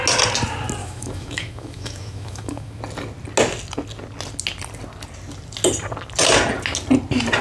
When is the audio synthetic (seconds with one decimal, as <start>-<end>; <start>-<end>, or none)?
0.8-2.8

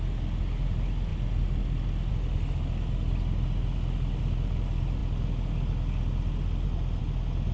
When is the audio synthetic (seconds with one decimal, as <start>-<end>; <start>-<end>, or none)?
none

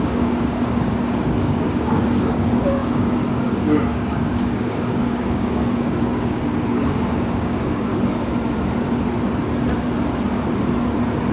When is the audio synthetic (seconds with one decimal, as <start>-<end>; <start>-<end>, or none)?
0.0-7.9

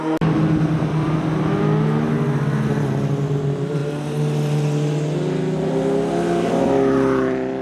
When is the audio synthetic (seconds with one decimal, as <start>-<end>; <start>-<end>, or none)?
none

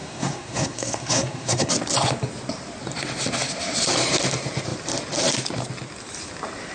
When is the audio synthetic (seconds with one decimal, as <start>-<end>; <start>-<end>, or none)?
0.0-1.7